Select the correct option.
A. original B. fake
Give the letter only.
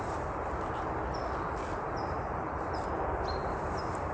A